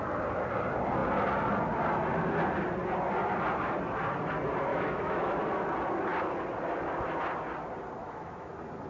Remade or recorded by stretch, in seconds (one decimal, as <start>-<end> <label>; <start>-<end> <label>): 0.0-4.7 recorded; 4.7-5.4 remade; 5.4-8.0 recorded; 8.0-8.5 remade; 8.5-8.9 recorded